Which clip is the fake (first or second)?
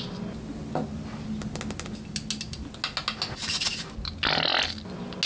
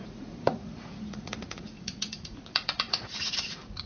second